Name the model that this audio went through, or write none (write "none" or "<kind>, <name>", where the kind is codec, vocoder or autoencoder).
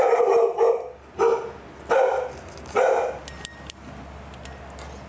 none